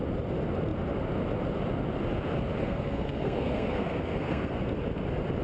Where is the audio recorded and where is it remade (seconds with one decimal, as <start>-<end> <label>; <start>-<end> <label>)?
0.0-2.6 recorded; 2.6-4.6 remade; 4.6-5.4 recorded